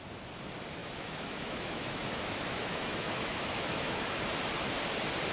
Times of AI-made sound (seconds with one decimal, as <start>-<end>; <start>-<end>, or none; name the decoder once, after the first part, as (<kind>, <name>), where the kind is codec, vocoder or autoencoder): 0.8-4.0 (autoencoder, DAC-VAE)

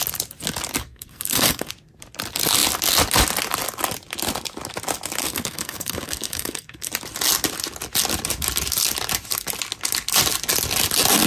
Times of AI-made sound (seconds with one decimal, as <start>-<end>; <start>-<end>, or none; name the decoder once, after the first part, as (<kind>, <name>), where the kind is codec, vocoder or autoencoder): 0.8-1.7 (codec, SNAC); 5.2-6.9

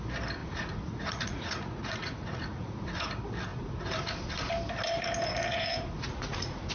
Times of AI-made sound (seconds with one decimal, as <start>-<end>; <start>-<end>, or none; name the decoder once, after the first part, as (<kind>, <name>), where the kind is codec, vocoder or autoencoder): 0.4-3.1 (vocoder, Vocos); 3.5-4.5; 5.5-6.7

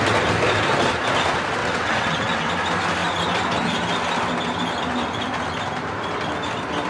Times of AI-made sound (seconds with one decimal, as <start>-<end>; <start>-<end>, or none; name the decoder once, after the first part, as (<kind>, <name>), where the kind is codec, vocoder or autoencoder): 1.6-2.5 (vocoder, WaveNeXt)

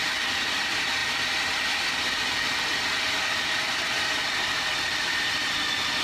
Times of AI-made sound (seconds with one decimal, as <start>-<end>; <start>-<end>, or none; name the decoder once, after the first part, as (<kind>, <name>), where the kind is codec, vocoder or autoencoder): none

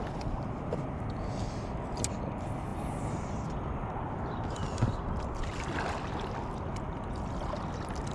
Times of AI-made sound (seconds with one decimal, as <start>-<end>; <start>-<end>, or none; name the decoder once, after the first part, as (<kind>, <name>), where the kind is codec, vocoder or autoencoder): 2.7-4.6 (vocoder, BigVGAN v2)

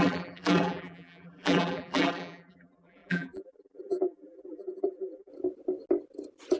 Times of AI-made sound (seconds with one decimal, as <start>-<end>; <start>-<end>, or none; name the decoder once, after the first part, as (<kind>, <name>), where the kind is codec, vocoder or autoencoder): 0.0-5.3 (vocoder, BigVGAN v2)

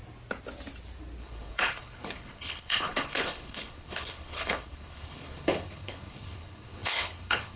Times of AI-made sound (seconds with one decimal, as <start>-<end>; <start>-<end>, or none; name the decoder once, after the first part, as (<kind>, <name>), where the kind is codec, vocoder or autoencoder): 1.2-7.6 (codec, HILCodec)